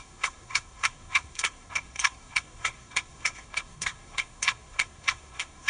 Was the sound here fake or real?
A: fake